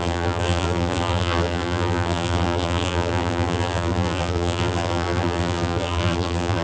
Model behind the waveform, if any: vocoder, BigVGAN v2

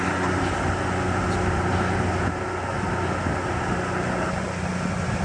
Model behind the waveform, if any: none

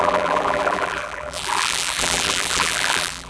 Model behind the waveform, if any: vocoder, BigVGAN v2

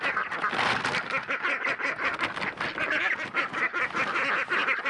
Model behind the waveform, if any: none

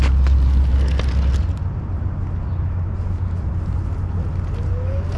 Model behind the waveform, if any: none